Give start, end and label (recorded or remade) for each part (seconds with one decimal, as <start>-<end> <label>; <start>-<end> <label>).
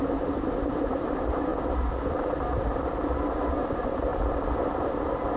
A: 0.0-1.5 remade; 1.5-3.5 recorded; 3.5-5.4 remade